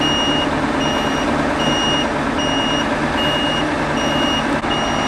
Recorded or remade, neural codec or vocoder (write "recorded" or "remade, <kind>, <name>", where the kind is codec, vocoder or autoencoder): recorded